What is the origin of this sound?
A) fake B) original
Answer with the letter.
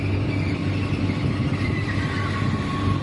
B